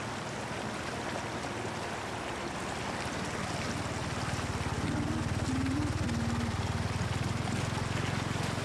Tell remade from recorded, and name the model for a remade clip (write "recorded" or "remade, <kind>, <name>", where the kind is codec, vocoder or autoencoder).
recorded